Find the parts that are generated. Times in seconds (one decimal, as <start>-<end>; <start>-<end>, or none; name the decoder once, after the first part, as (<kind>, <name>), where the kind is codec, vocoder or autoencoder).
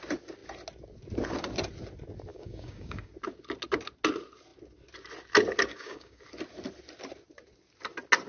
2.3-3.1 (codec, DAC); 5.7-6.2